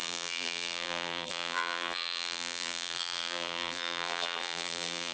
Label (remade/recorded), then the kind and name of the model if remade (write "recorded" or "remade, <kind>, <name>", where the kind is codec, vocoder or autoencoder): remade, vocoder, BigVGAN v2